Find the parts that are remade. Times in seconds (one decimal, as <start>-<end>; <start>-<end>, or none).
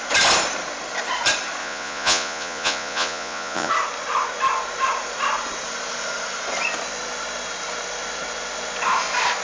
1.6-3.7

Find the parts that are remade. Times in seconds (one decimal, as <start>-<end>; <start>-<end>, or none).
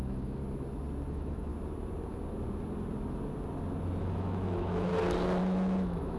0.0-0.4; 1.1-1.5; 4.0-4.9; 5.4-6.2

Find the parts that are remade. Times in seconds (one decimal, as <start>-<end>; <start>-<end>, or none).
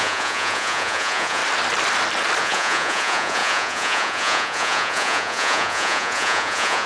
0.0-1.4; 2.4-6.9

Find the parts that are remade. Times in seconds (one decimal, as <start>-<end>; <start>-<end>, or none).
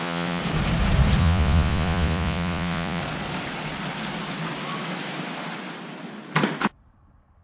0.0-0.4; 1.2-3.0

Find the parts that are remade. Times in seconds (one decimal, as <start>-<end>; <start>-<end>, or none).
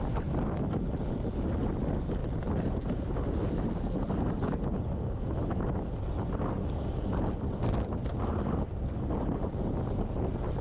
none